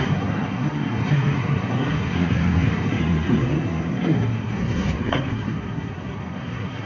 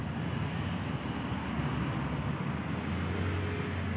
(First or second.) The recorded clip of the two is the second